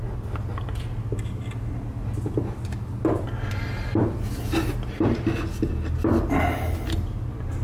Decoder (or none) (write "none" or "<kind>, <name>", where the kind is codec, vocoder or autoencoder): none